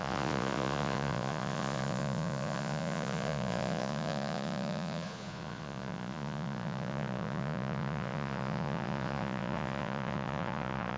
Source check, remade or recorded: remade